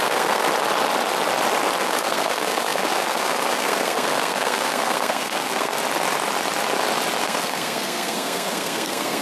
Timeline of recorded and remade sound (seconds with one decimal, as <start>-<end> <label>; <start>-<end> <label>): 0.0-0.5 remade; 0.5-1.8 recorded; 1.8-5.8 remade; 5.8-7.2 recorded; 7.2-9.2 remade